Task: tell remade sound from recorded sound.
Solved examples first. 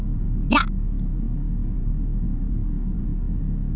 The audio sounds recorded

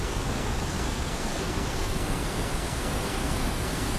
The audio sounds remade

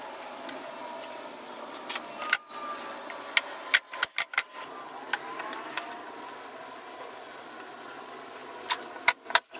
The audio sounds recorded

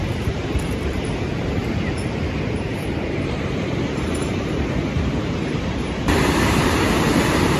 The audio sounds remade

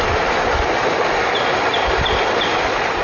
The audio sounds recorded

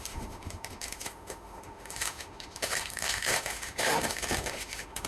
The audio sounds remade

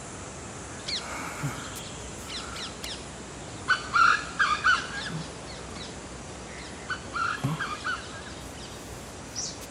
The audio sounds recorded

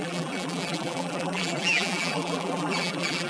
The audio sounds remade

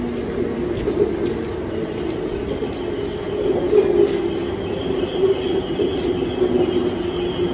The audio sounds recorded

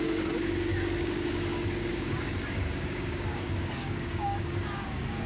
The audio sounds remade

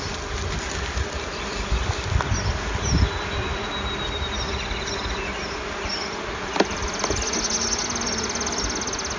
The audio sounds recorded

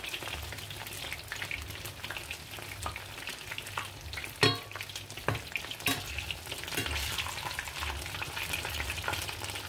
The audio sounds recorded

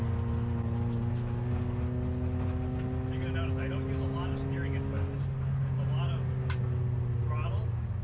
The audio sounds recorded